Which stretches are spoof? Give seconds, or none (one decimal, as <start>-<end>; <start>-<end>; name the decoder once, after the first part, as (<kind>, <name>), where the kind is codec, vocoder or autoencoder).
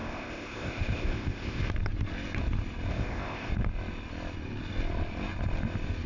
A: 0.0-1.7 (codec, ZipCodec); 2.9-3.5